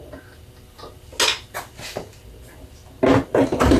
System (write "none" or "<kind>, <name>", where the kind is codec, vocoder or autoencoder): none